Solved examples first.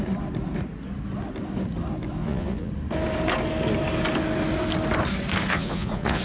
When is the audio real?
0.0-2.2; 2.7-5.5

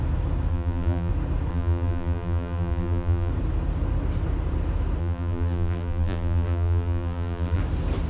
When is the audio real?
0.0-0.5; 1.1-1.5; 3.3-5.0; 7.6-8.1